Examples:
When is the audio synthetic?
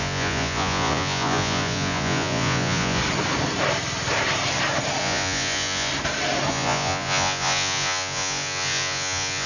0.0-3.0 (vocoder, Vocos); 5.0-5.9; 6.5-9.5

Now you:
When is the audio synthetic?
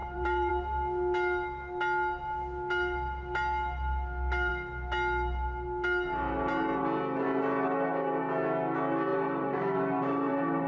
0.0-0.5 (vocoder, BigVGAN v2); 9.1-10.7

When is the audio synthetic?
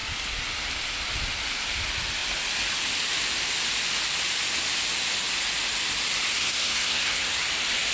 6.4-7.4 (codec, SNAC)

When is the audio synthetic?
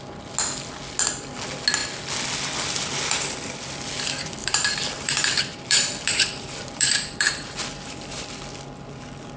4.4-8.3 (vocoder, BigVGAN v2)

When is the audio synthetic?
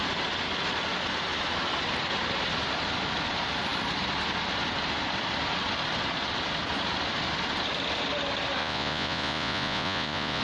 8.6-10.4 (vocoder, Vocos)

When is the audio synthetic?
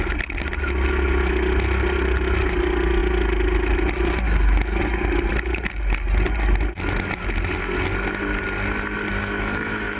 9.2-10.0 (autoencoder, DAC-VAE)